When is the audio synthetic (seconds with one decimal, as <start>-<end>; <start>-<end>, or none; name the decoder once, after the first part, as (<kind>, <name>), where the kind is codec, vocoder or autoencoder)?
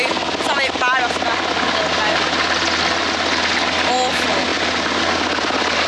none